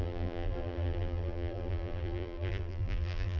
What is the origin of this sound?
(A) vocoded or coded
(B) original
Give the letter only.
A